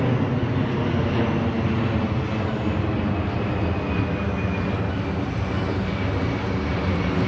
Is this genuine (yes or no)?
yes